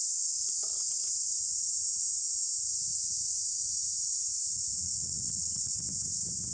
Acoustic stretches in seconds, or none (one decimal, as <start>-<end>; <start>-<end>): 2.3-2.9; 5.7-6.5

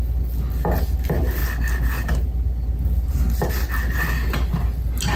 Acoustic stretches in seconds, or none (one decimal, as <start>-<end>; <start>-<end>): 0.0-5.2